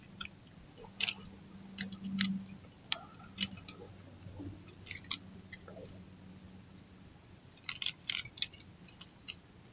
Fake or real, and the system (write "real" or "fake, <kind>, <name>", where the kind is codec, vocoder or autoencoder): real